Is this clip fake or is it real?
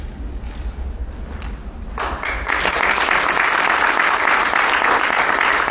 real